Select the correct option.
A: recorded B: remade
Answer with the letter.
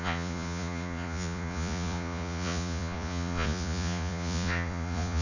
B